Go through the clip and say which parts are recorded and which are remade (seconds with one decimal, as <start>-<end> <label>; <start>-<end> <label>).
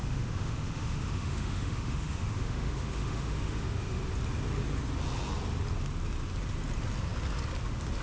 0.0-4.0 remade; 4.0-8.0 recorded